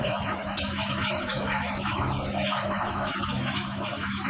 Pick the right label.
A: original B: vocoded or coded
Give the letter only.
B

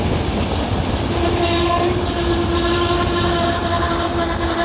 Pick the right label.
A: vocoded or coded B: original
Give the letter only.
B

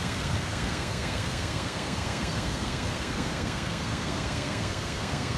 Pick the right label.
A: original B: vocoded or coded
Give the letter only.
B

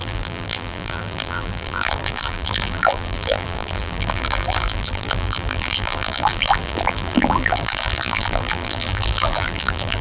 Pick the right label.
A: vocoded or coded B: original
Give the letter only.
A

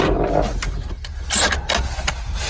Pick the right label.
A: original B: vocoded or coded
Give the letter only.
A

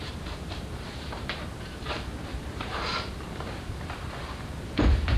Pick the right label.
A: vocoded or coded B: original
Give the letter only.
A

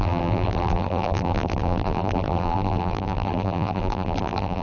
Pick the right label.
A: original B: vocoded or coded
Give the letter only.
B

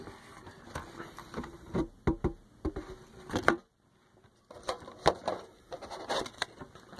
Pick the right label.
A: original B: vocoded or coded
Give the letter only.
A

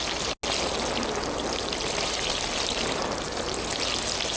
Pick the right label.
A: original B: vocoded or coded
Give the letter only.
A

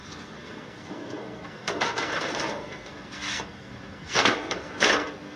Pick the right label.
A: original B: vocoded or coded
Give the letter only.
B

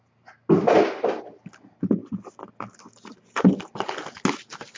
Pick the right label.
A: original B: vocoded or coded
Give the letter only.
A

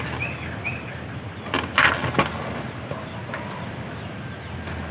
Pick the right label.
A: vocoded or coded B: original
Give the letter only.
B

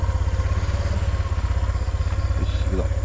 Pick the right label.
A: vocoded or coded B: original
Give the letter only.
B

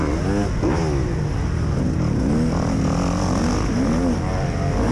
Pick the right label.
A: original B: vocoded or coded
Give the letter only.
A